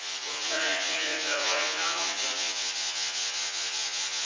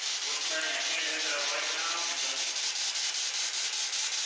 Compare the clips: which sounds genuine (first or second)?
second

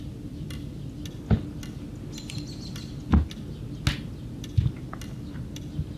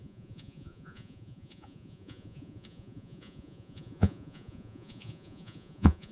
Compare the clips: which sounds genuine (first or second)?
first